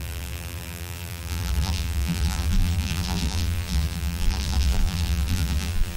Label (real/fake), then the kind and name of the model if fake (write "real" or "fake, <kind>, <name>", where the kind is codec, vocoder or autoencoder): fake, vocoder, BigVGAN v2